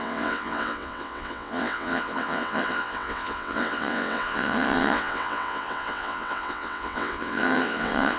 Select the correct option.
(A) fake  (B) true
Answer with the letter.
A